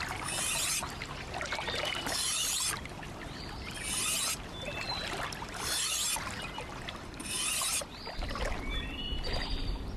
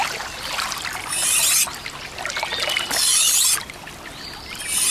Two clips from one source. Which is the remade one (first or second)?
first